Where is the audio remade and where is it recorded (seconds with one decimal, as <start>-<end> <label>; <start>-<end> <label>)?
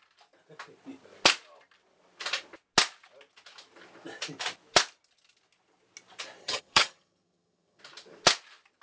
0.0-6.4 recorded; 6.4-7.8 remade; 7.8-8.8 recorded